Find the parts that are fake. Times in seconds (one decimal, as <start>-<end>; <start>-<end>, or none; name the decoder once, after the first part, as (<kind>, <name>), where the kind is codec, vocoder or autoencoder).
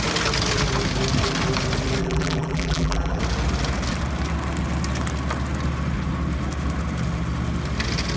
2.0-3.2 (vocoder, BigVGAN v2)